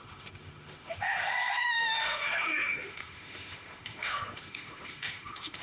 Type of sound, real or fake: fake